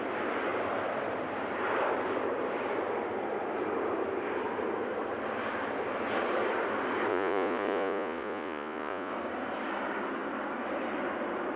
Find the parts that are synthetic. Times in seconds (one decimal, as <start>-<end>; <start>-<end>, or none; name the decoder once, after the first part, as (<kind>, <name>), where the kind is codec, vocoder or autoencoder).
7.1-9.1 (vocoder, Vocos)